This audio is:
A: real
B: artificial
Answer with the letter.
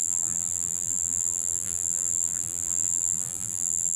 B